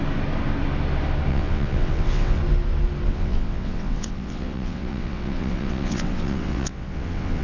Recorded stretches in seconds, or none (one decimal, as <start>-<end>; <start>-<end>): 0.0-1.3; 2.4-3.1